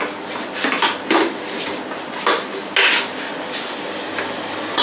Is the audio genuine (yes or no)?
yes